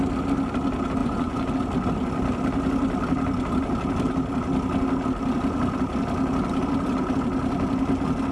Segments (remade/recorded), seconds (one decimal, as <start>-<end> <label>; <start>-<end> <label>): 0.0-1.0 recorded; 1.0-1.5 remade; 1.5-8.3 recorded